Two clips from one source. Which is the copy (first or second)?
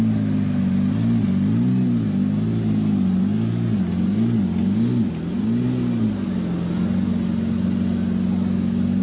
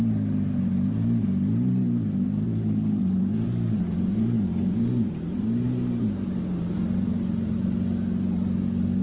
second